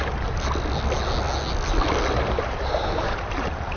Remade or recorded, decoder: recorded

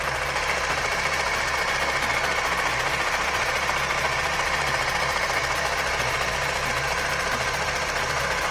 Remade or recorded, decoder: recorded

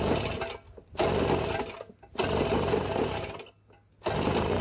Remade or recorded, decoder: recorded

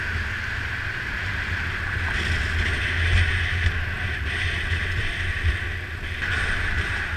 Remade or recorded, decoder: recorded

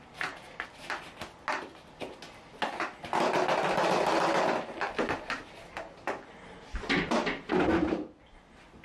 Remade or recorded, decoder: recorded